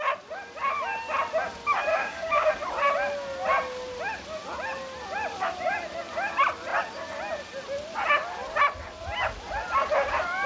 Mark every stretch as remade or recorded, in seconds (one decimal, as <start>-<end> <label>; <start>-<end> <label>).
0.0-1.9 recorded; 1.9-2.5 remade; 2.5-10.5 recorded